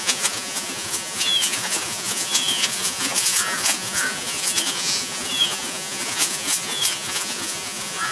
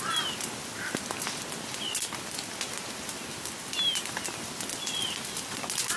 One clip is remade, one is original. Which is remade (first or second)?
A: first